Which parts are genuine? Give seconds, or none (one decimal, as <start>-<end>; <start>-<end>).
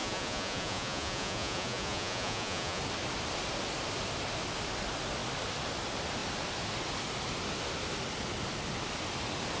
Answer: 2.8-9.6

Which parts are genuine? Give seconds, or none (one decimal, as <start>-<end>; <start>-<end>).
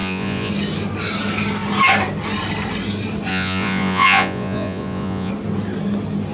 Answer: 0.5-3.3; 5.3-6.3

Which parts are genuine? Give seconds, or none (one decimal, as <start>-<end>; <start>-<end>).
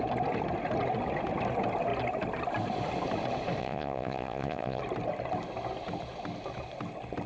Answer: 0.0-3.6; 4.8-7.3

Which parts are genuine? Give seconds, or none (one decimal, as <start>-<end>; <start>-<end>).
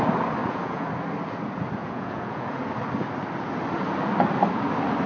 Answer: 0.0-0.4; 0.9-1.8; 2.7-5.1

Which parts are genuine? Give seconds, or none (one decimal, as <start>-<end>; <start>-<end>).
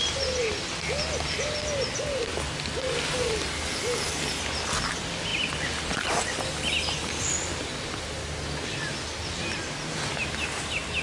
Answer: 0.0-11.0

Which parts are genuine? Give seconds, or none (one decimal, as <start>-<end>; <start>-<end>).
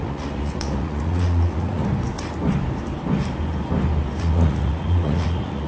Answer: 1.8-4.2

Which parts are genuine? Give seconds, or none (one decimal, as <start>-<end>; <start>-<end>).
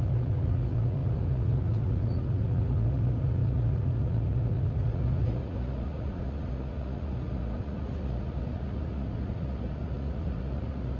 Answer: none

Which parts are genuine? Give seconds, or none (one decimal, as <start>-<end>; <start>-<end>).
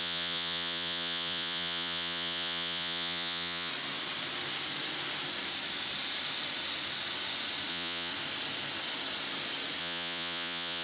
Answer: 3.7-7.7; 8.1-9.8